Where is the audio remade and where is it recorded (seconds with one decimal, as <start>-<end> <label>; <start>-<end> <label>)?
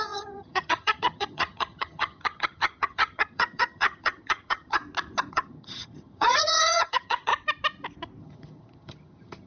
0.0-4.8 remade; 4.8-5.3 recorded; 5.3-7.3 remade; 7.3-8.2 recorded; 8.2-9.5 remade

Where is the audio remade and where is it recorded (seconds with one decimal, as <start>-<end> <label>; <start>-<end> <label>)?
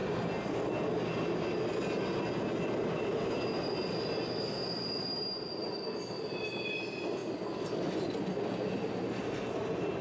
0.0-10.0 recorded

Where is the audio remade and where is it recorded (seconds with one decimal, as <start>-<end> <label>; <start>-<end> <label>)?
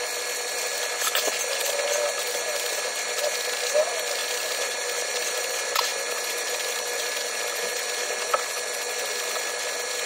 0.0-10.1 recorded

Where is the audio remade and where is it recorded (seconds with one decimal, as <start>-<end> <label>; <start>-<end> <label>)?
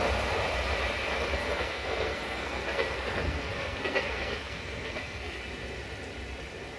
0.0-1.3 recorded; 1.3-5.4 remade; 5.4-6.8 recorded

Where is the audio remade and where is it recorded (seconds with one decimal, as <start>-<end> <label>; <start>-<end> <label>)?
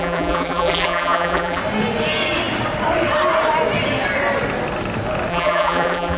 0.0-1.6 remade; 1.6-5.3 recorded; 5.3-6.2 remade